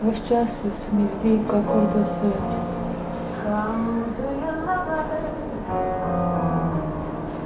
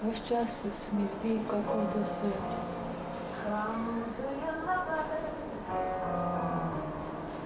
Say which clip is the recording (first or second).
first